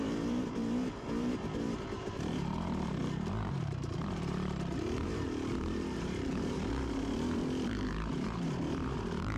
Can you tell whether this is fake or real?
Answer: fake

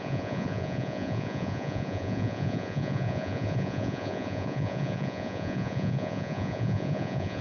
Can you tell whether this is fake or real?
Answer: fake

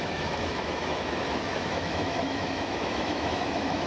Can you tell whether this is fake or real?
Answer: fake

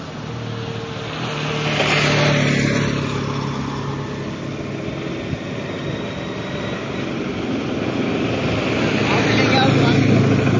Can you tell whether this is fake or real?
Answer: real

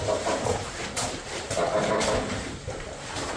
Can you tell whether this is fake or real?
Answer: fake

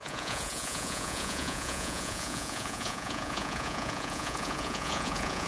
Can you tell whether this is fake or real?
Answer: fake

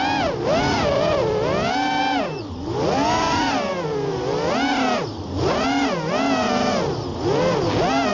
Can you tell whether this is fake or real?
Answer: real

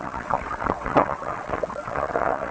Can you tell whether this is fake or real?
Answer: fake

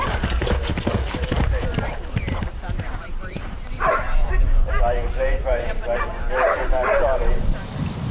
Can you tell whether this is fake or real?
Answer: fake